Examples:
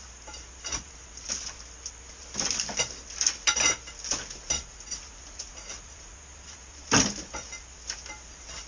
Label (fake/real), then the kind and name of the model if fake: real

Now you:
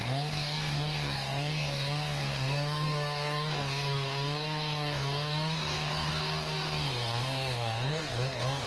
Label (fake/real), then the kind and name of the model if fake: fake, codec, DAC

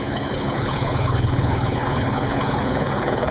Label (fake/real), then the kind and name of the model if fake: fake, codec, HILCodec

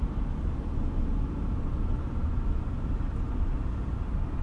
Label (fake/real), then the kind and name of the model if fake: real